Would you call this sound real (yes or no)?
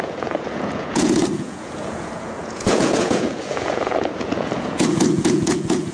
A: no